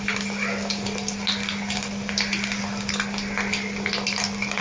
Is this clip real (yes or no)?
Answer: yes